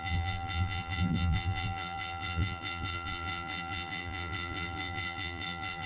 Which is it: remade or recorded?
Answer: remade